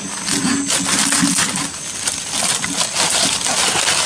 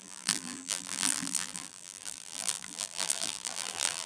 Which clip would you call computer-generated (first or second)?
second